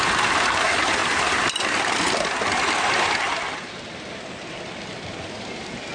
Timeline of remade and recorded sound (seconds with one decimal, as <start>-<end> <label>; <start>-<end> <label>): 0.0-5.9 recorded